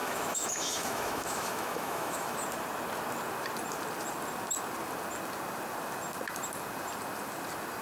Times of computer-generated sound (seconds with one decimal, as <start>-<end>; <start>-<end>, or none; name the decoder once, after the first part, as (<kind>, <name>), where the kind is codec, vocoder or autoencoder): 0.0-2.4 (autoencoder, DAC-VAE)

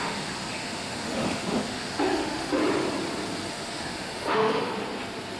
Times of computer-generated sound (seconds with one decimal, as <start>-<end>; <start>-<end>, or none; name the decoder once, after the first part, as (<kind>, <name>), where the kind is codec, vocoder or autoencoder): 0.0-2.6 (autoencoder, DAC-VAE); 3.5-4.7

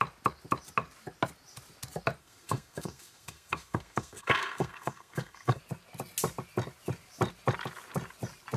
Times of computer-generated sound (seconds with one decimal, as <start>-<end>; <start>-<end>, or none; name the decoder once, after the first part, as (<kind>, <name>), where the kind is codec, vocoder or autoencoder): 2.2-5.6 (codec, SNAC)

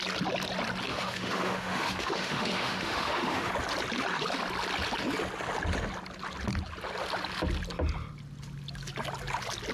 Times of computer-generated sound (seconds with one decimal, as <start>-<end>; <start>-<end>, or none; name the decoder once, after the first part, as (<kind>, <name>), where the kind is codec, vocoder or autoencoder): 0.9-3.5 (autoencoder, DAC-VAE)

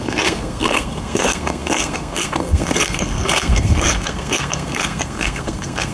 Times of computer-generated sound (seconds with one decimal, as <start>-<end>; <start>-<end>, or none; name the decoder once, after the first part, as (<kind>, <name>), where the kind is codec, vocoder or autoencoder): 0.0-5.9 (codec, SNAC)

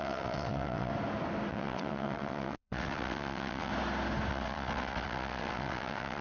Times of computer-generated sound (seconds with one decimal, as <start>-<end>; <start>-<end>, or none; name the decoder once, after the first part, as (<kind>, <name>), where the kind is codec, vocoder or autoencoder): 0.0-0.9 (vocoder, WaveNeXt); 1.5-3.7; 4.3-6.2

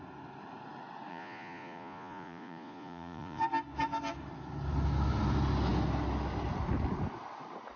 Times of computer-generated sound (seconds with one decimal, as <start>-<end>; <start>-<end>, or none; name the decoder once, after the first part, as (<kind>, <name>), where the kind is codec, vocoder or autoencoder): 1.1-3.4 (vocoder, Vocos)